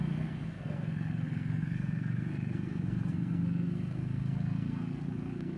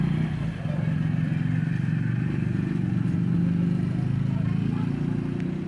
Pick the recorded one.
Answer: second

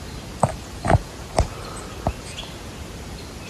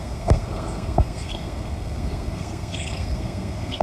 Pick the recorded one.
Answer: first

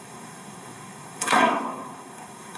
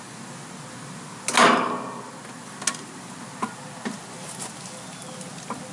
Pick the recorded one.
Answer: second